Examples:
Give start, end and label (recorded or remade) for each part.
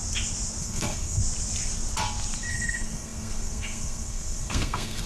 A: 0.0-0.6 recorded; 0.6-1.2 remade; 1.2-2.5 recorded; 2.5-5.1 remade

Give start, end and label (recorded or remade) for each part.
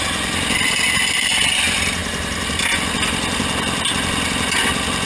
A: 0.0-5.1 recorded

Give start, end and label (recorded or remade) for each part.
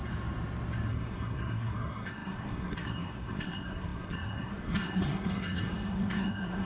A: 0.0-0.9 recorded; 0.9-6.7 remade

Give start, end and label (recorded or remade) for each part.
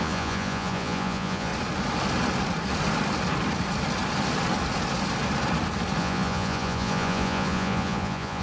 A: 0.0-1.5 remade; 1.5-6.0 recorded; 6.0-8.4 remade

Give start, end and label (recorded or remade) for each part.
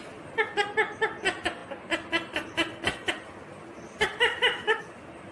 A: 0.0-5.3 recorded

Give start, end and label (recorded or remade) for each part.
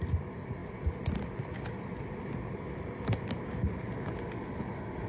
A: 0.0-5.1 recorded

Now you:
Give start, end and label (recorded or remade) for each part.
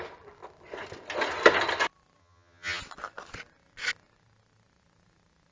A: 0.0-2.2 recorded; 2.2-2.8 remade; 2.8-5.5 recorded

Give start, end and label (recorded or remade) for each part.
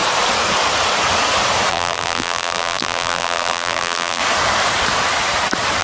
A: 0.0-1.7 recorded; 1.7-4.2 remade; 4.2-5.8 recorded